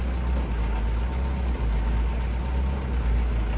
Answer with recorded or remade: recorded